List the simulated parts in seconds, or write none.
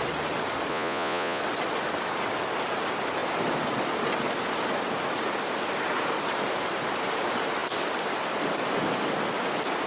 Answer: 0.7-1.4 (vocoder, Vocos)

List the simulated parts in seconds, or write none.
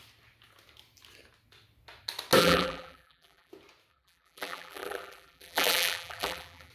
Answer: 2.4-3.5 (vocoder, BigVGAN v2); 3.9-6.7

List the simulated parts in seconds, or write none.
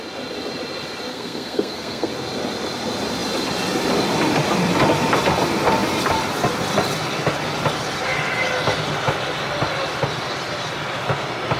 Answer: 1.1-2.1 (codec, SNAC)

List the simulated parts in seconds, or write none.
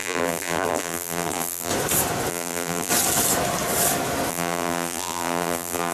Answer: 0.0-1.7 (vocoder, BigVGAN v2); 2.3-2.9; 4.3-5.9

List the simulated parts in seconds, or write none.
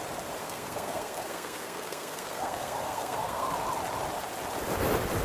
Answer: 0.4-3.5 (codec, SNAC)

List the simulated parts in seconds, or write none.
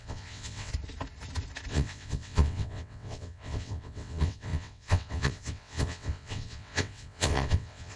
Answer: 0.0-0.7 (vocoder, WaveNeXt); 1.7-8.0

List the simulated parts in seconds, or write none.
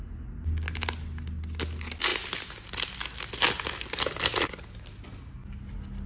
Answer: none